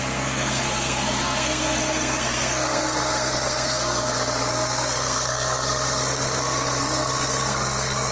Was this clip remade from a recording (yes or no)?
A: yes